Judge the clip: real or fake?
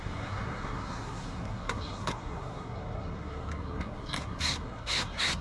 fake